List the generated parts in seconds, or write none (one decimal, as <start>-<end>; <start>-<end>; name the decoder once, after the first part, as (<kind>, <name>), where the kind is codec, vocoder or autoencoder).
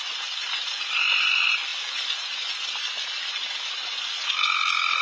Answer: none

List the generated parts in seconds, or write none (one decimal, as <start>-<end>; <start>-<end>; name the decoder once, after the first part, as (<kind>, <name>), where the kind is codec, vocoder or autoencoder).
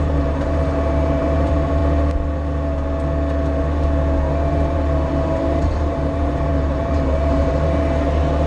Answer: 0.0-1.8 (vocoder, BigVGAN v2); 4.5-8.5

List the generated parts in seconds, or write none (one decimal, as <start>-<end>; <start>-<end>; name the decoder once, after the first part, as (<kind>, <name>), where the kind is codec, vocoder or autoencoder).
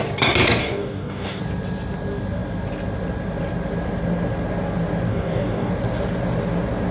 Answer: 0.6-1.4 (codec, DAC); 5.1-5.7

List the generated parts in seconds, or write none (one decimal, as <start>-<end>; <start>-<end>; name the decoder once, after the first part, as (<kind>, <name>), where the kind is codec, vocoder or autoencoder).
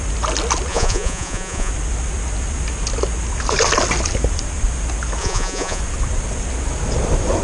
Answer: 0.7-1.7 (vocoder, Vocos); 5.2-5.8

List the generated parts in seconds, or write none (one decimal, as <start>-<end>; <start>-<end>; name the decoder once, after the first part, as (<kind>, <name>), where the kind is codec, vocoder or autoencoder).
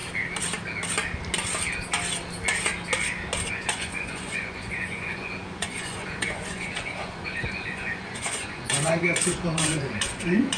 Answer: 3.5-10.6 (vocoder, Vocos)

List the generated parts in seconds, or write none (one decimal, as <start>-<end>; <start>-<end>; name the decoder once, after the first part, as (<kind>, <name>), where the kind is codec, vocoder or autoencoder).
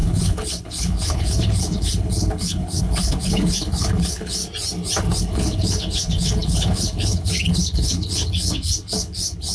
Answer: 0.0-4.4 (codec, HILCodec); 5.2-9.5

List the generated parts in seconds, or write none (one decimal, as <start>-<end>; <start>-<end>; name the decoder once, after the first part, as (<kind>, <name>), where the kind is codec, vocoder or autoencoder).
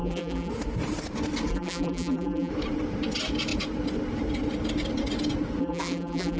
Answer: 0.0-0.5 (vocoder, BigVGAN v2); 1.5-2.5; 5.6-6.4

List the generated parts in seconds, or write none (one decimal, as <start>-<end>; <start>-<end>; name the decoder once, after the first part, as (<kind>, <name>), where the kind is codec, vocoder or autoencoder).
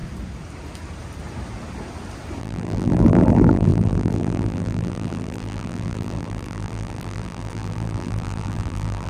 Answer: 2.4-9.1 (vocoder, BigVGAN v2)